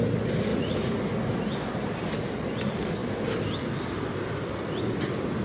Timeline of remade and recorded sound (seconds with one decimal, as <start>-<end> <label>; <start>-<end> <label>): 0.0-0.5 recorded; 0.5-1.0 remade; 1.0-5.4 recorded